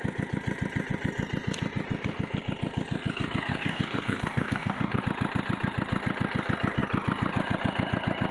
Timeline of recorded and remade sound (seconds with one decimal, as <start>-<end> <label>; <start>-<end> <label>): 0.0-3.5 recorded; 3.5-5.0 remade; 5.0-8.3 recorded